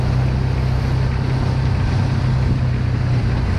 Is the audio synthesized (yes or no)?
no